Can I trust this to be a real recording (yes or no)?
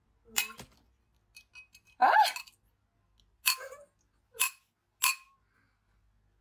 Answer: yes